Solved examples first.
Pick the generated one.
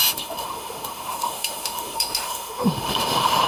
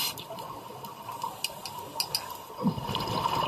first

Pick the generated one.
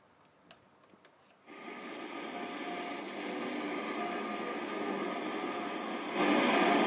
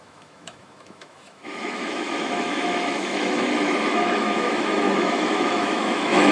second